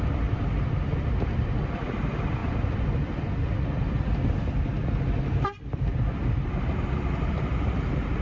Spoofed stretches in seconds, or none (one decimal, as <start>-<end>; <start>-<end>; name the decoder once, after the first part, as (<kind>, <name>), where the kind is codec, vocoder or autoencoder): none